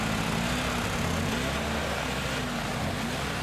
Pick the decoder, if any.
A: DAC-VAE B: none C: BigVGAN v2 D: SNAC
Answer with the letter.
B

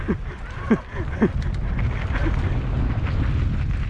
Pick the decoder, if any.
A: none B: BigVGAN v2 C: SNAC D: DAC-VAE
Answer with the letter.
A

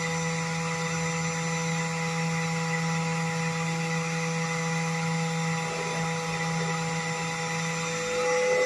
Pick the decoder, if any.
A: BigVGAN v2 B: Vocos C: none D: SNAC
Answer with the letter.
C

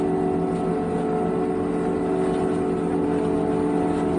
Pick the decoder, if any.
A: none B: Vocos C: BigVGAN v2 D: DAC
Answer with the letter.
A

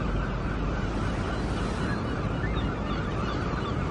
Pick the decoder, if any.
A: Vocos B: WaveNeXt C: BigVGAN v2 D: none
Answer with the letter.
C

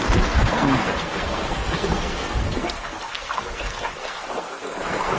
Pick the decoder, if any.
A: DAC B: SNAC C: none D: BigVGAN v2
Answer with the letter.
B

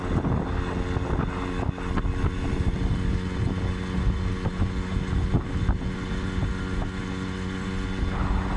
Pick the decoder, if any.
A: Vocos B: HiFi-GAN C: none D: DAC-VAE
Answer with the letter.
C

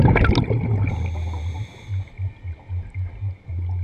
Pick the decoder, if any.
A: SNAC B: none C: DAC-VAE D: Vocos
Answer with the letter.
B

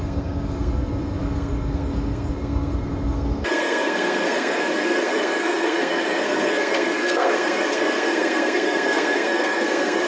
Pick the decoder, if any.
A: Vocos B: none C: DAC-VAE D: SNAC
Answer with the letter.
D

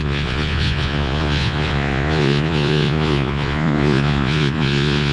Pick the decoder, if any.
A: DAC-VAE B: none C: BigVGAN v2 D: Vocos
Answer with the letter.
D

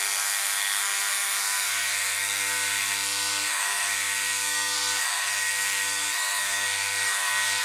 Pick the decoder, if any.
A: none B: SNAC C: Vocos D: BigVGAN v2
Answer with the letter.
B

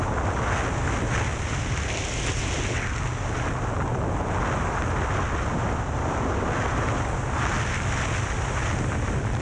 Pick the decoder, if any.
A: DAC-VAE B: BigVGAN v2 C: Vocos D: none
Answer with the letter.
D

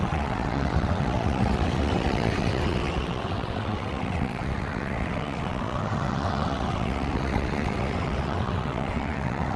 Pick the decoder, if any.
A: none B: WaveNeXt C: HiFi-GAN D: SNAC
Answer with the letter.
B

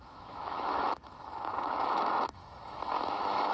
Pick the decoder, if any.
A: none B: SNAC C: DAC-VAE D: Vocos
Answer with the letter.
C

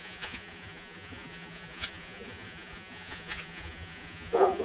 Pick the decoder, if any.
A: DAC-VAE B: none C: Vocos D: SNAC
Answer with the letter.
C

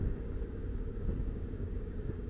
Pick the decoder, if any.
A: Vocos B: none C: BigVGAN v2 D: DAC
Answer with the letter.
D